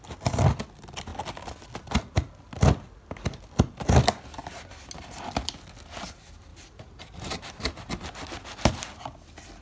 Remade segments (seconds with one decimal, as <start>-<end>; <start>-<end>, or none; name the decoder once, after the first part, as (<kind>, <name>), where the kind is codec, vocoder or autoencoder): 6.5-7.9 (vocoder, BigVGAN v2)